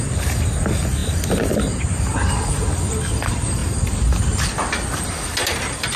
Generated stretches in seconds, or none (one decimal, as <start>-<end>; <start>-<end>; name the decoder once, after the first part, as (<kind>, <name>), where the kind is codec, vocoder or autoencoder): none